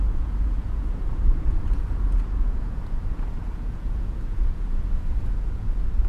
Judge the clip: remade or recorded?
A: remade